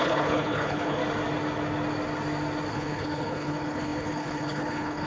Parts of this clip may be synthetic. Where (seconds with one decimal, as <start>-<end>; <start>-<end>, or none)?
0.0-1.0; 2.7-5.1